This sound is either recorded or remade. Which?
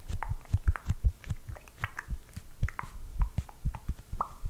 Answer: recorded